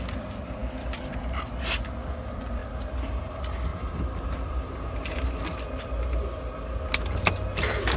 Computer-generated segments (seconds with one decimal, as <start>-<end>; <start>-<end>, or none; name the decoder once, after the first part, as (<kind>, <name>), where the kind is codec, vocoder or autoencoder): 3.7-5.4 (vocoder, BigVGAN v2)